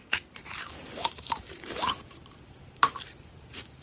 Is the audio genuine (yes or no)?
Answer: no